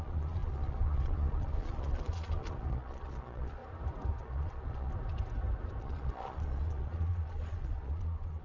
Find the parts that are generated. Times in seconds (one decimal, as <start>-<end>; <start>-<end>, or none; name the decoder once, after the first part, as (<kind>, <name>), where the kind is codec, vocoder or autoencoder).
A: 0.0-3.6 (vocoder, Vocos); 4.2-4.9; 5.8-8.4